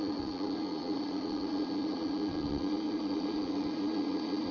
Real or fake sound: fake